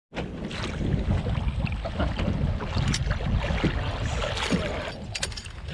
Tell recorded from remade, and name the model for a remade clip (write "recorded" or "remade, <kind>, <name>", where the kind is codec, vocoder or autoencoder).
recorded